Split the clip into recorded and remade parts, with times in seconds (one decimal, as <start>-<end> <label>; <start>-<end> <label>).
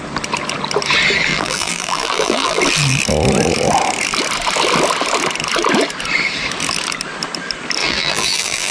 0.0-1.3 recorded; 1.3-2.6 remade; 2.6-7.8 recorded; 7.8-8.7 remade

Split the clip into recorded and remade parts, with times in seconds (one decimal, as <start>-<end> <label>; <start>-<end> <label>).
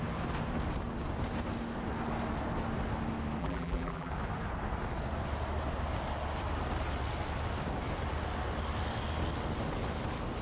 0.0-3.4 recorded; 3.4-4.1 remade; 4.1-10.4 recorded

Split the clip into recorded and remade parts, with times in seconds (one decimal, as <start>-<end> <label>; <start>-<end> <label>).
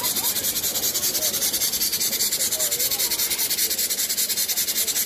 0.0-5.1 recorded